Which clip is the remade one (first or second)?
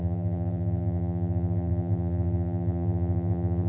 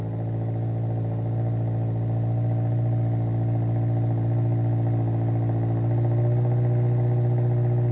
first